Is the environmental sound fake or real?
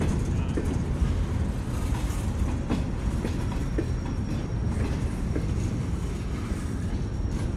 real